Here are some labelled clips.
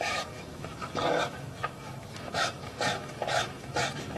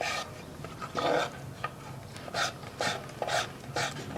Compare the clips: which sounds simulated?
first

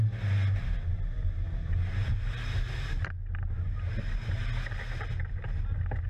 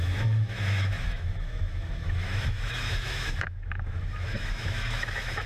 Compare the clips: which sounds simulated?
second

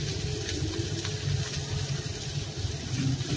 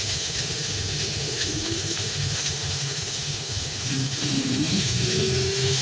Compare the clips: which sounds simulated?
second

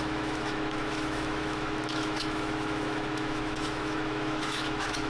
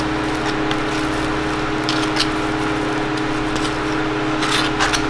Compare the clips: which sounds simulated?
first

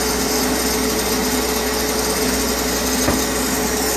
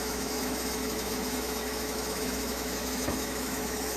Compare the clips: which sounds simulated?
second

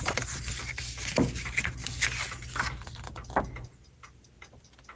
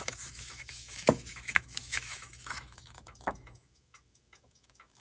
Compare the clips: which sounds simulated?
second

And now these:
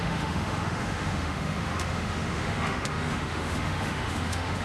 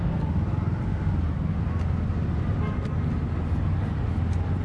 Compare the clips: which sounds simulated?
first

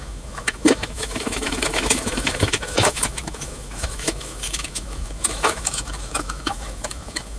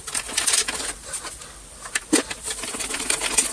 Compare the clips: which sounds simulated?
first